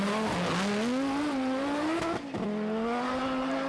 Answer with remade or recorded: recorded